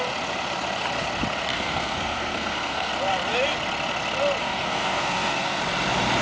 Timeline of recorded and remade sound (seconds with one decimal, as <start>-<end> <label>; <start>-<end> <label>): 0.0-1.5 recorded; 1.5-2.9 remade; 2.9-4.4 recorded; 4.4-5.6 remade; 5.6-6.2 recorded